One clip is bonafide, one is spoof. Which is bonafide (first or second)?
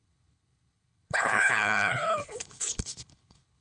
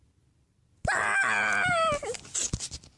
second